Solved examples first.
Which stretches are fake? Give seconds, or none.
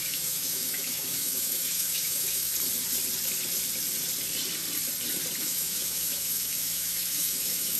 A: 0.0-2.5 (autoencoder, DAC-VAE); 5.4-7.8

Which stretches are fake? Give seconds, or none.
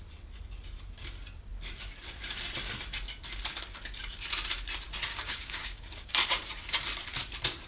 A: 5.1-6.1 (codec, DAC)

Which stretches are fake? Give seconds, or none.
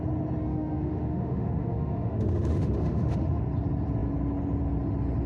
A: 0.4-3.4 (autoencoder, DAC-VAE)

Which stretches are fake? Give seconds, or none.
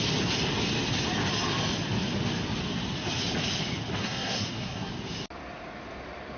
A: 4.0-4.9 (codec, SNAC)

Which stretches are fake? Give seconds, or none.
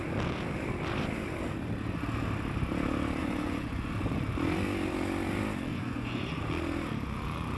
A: 3.2-3.9 (vocoder, Vocos); 5.7-6.4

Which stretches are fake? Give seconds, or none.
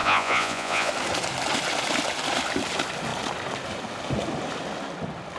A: 0.0-0.9 (vocoder, Vocos)